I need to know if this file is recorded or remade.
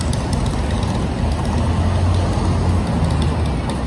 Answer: recorded